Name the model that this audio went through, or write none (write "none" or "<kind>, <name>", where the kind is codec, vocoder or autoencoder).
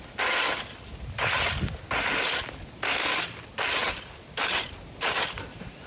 none